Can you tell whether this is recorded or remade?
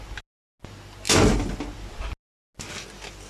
recorded